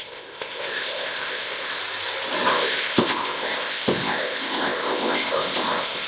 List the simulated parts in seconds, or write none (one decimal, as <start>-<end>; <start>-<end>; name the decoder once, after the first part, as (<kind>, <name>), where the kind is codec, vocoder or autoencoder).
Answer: 0.0-1.8 (codec, ZipCodec); 2.5-6.1